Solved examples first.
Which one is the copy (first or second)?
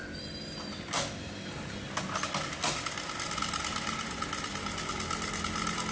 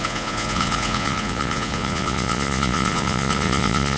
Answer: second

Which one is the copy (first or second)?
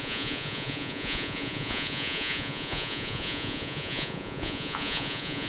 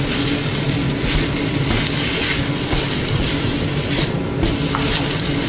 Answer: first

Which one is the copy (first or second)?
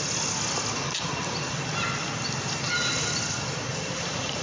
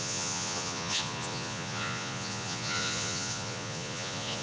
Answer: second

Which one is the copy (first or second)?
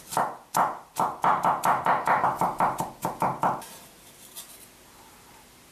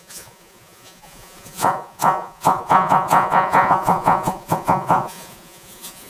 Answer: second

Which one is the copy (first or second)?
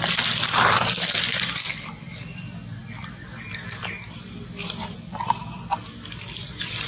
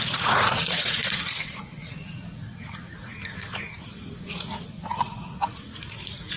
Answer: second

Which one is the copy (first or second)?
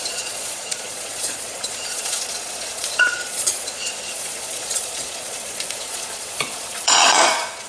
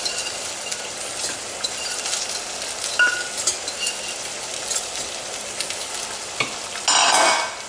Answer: first